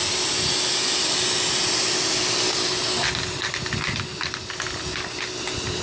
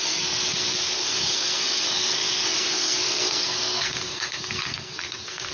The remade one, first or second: second